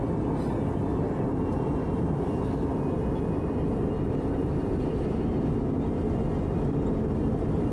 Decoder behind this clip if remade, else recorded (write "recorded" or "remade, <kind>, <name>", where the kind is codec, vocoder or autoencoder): recorded